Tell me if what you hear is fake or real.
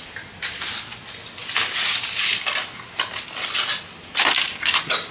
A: real